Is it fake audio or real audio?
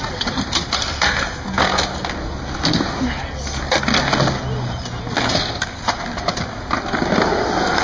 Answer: real